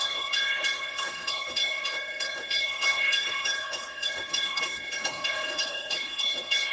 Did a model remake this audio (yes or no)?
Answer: yes